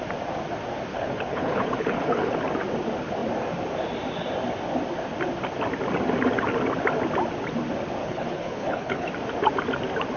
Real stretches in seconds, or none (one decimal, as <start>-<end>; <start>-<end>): 0.0-0.9; 2.4-8.0; 9.1-10.2